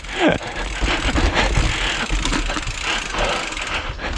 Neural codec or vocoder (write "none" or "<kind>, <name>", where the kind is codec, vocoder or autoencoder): none